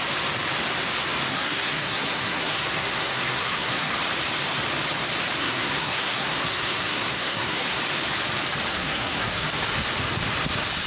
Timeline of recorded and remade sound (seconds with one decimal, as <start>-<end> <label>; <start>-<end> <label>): 0.0-1.3 recorded; 1.3-3.9 remade; 3.9-5.4 recorded; 5.4-7.8 remade; 7.8-8.7 recorded; 8.7-9.5 remade; 9.5-10.9 recorded